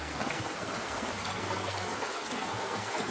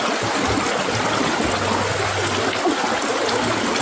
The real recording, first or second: second